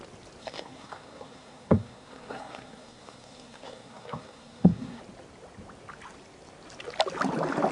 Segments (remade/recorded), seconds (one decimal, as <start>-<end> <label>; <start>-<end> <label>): 0.0-0.4 recorded; 0.4-5.0 remade; 5.0-7.7 recorded